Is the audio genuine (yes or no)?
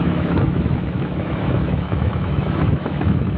no